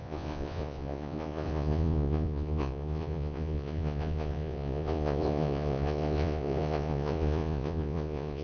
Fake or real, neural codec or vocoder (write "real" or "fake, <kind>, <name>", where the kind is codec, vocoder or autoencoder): fake, vocoder, Vocos